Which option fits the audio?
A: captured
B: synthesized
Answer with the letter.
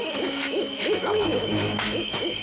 B